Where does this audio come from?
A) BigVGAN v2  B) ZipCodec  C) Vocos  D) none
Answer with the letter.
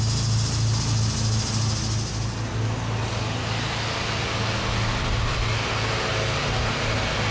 D